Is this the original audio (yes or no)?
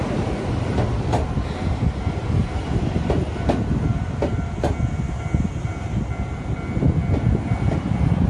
yes